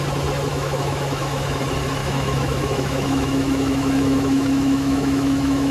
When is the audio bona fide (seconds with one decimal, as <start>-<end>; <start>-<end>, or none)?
0.0-0.5; 1.6-2.0